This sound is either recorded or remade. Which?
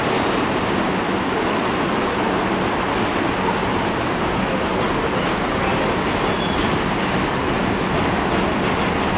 recorded